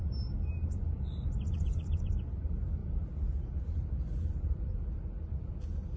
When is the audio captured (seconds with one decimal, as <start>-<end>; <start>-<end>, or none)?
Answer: 0.0-0.8; 2.1-6.0